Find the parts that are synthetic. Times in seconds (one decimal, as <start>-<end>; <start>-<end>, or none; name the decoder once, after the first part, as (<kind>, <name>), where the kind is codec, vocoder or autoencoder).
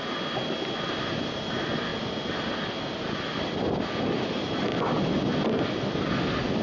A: none